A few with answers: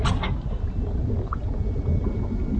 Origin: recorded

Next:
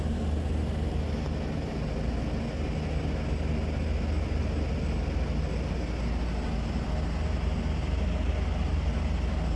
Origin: recorded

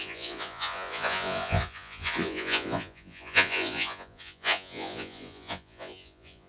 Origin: remade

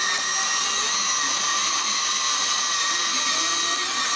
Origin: recorded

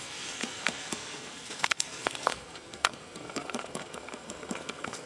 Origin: remade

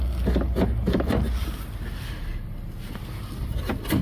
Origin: recorded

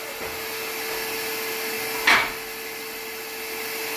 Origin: recorded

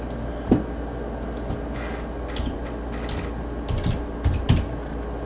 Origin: recorded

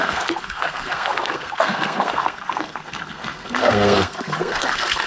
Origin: remade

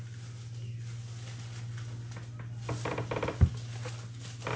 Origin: recorded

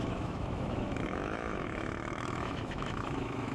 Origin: remade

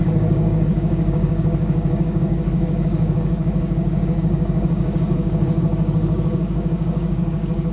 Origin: remade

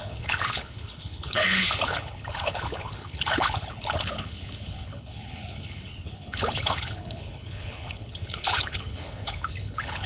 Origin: remade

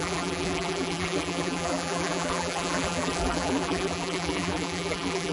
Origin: remade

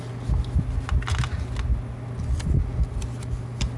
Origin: recorded